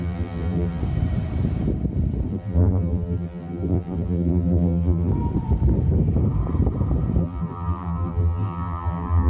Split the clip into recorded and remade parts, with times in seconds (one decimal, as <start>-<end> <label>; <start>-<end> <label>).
0.0-0.8 remade; 0.8-2.3 recorded; 2.3-5.1 remade; 5.1-7.2 recorded; 7.2-9.3 remade